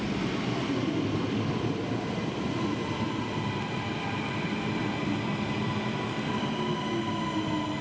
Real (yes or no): yes